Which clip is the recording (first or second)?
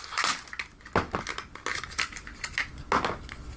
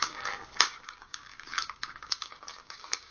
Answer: first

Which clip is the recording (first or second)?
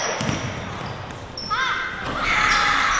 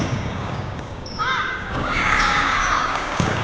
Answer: first